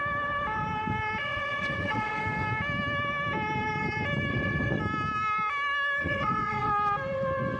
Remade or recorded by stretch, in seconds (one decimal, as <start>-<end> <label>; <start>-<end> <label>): 0.0-1.2 recorded; 1.2-2.2 remade; 2.2-4.3 recorded; 4.3-4.8 remade; 4.8-6.0 recorded; 6.0-6.7 remade; 6.7-7.6 recorded